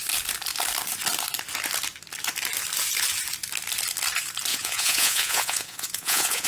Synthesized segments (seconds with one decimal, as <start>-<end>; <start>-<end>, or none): 4.5-6.5